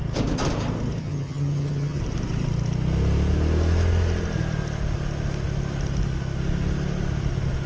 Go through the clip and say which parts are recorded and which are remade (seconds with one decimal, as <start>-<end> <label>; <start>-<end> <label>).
0.0-1.0 recorded; 1.0-2.0 remade; 2.0-7.7 recorded

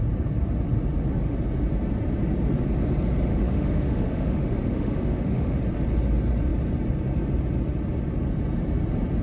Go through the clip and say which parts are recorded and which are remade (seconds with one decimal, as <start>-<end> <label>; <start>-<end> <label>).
0.0-3.3 recorded; 3.3-5.6 remade; 5.6-9.2 recorded